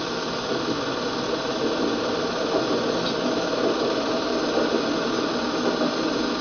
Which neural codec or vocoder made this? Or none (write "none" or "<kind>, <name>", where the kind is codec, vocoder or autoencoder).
none